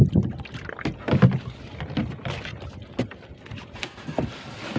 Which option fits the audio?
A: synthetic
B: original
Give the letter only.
B